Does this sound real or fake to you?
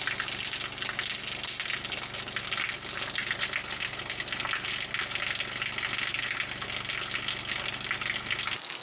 real